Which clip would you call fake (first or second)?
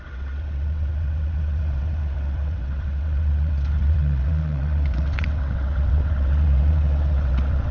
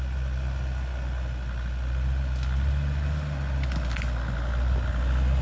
first